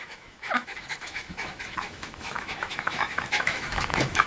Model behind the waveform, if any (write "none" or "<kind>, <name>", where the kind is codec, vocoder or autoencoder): autoencoder, DAC-VAE